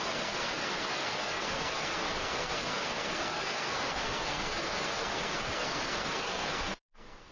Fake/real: fake